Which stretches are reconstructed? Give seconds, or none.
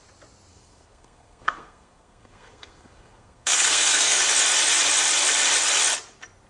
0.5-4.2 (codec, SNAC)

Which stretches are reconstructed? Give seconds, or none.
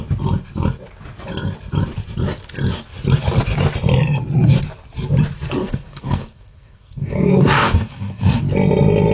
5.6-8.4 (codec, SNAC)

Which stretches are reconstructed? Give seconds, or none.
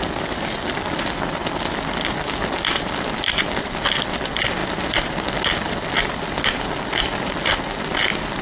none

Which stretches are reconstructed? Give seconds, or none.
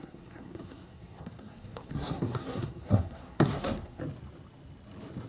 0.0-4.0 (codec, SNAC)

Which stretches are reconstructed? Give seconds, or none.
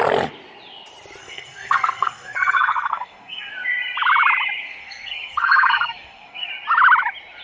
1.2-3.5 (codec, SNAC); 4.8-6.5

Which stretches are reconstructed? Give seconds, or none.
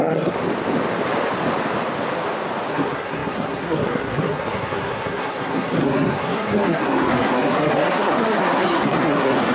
0.0-0.4 (codec, SNAC); 2.7-9.5